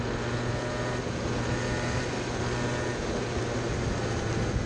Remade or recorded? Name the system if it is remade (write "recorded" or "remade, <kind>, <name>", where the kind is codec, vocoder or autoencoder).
recorded